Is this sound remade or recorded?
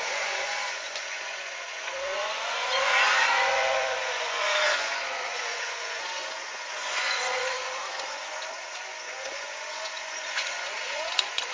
remade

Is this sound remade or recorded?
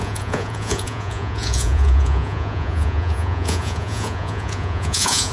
remade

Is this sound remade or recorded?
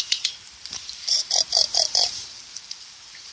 remade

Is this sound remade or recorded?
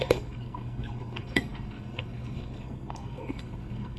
remade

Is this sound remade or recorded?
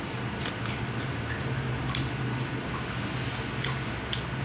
recorded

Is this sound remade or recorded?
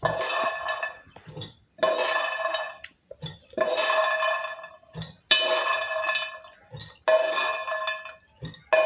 recorded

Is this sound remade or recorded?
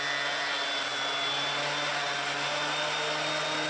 recorded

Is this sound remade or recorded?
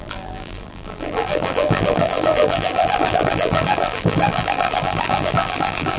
remade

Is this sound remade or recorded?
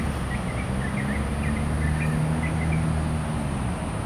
recorded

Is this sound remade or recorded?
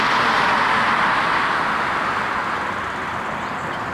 recorded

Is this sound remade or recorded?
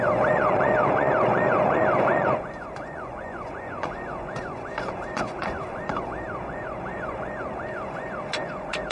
remade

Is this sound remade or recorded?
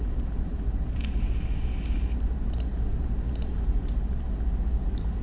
remade